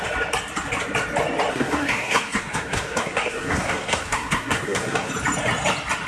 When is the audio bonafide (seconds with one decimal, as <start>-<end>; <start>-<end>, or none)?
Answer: 0.0-1.5; 5.1-6.1